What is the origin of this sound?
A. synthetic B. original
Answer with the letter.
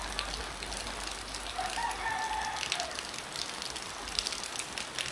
B